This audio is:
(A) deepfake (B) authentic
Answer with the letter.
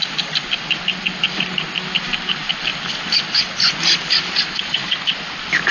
B